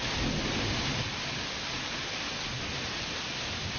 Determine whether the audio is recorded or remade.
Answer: recorded